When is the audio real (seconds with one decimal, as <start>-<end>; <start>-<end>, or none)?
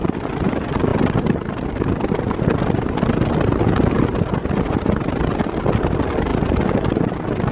0.0-7.5